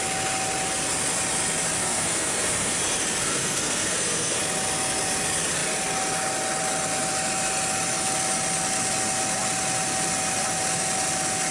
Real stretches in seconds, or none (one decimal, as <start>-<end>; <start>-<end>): 0.0-1.8; 2.8-3.2; 4.4-11.5